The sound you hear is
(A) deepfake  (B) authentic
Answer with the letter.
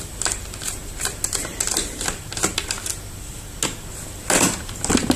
B